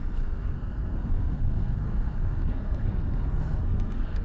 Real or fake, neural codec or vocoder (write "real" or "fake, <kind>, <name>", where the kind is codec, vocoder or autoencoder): fake, codec, SNAC